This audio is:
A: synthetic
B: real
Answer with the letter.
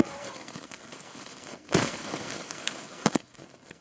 A